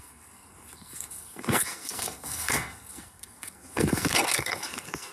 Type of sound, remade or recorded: remade